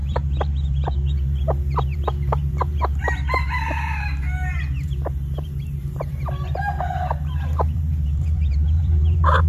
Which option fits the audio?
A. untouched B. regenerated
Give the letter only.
B